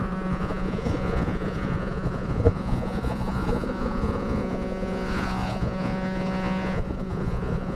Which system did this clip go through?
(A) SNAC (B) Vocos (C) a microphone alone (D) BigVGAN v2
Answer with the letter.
B